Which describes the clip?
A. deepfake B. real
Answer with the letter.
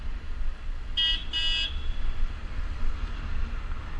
B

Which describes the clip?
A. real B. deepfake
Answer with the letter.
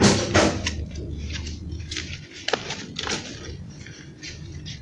A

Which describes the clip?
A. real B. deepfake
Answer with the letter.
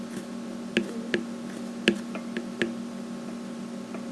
A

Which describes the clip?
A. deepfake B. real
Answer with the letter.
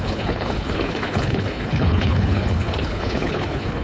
A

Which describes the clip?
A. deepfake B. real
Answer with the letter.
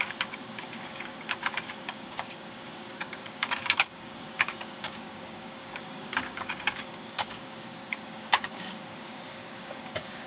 A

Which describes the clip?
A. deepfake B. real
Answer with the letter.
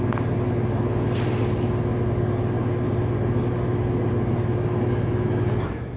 B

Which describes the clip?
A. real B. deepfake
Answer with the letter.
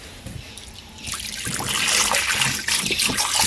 A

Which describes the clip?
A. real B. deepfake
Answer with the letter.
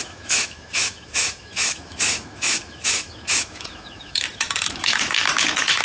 B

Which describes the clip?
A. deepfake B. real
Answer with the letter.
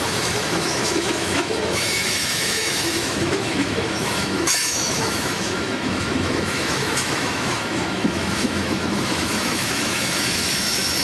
A